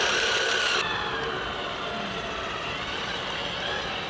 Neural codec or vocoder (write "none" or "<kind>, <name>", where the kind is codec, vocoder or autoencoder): none